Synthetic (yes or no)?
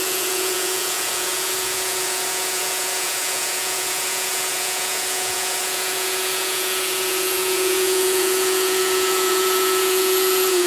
yes